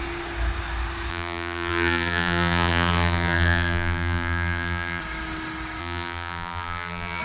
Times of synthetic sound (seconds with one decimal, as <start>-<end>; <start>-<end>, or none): 1.1-5.0; 5.8-7.2